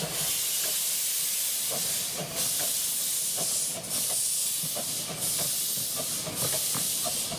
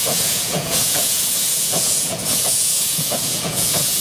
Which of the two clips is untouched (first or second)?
first